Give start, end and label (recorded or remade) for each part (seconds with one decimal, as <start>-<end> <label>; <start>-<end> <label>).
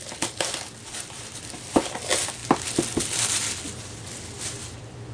0.0-5.1 recorded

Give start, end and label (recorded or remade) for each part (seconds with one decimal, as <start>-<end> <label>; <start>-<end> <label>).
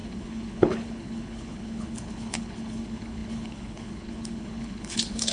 0.0-5.3 remade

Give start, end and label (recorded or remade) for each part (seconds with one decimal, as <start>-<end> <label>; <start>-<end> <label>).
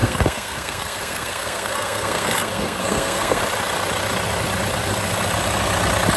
0.0-3.4 remade; 3.4-6.2 recorded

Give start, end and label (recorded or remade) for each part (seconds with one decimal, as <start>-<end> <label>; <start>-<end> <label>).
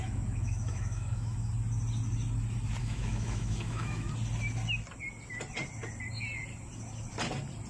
0.0-1.5 remade; 1.5-2.8 recorded; 2.8-4.1 remade; 4.1-7.7 recorded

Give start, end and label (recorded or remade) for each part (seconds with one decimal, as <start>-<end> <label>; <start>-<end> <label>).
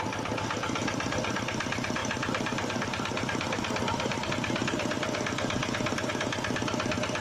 0.0-2.0 recorded; 2.0-4.3 remade; 4.3-5.6 recorded; 5.6-6.1 remade; 6.1-7.2 recorded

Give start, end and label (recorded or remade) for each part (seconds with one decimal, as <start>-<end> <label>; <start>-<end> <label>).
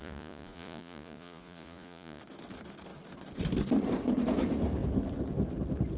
0.0-2.2 remade; 2.2-6.0 recorded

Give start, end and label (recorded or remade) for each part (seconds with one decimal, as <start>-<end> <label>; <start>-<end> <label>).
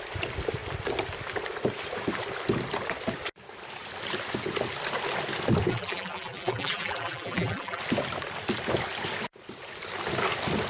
0.0-5.7 recorded; 5.7-7.8 remade; 7.8-10.7 recorded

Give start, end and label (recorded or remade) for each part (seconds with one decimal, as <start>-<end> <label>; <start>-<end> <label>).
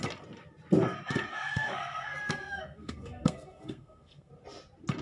0.0-1.3 recorded; 1.3-4.3 remade; 4.3-5.0 recorded